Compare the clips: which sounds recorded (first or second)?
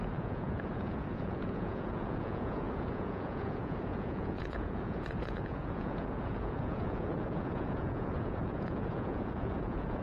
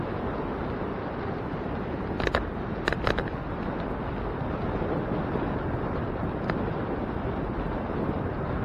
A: second